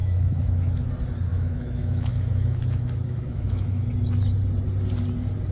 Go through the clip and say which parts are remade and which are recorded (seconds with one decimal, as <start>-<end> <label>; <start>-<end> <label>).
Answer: 0.0-0.9 remade; 0.9-1.3 recorded; 1.3-3.9 remade; 3.9-5.5 recorded